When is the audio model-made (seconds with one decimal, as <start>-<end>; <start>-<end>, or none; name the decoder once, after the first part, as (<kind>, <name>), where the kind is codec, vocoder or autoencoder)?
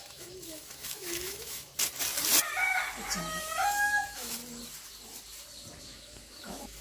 0.0-1.7 (autoencoder, DAC-VAE); 3.4-4.4; 5.8-6.8